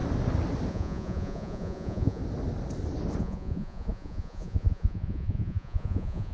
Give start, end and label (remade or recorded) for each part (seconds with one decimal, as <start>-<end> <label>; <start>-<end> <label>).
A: 0.0-0.7 recorded; 0.7-2.2 remade; 2.2-3.2 recorded; 3.2-6.3 remade